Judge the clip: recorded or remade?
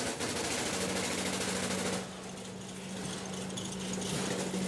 recorded